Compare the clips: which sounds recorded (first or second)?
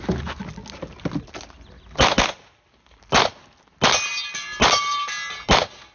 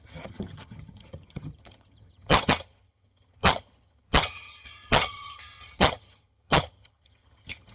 first